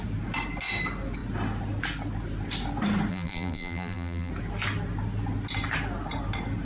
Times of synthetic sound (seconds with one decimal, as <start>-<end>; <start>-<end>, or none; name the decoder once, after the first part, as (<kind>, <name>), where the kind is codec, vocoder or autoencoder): 3.1-4.3 (vocoder, BigVGAN v2)